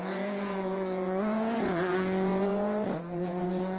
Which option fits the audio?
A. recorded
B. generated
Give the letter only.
B